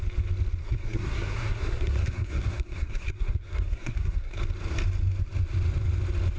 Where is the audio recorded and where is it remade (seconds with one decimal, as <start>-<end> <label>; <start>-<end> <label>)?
0.0-0.6 recorded; 0.6-4.4 remade; 4.4-6.4 recorded